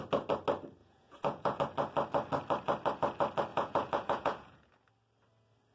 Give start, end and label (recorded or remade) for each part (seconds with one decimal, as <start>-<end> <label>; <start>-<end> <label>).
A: 0.0-0.8 recorded; 0.8-1.6 remade; 1.6-3.5 recorded; 3.5-4.9 remade; 4.9-5.7 recorded